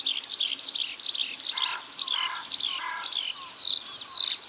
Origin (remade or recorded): recorded